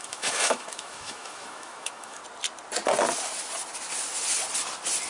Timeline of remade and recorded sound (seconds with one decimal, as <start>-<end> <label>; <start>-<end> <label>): 0.0-2.2 remade; 2.2-5.1 recorded